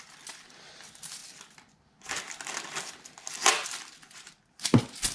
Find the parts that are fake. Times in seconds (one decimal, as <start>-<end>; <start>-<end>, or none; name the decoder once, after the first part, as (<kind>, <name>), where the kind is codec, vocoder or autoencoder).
none